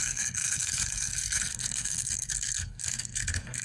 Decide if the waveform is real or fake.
fake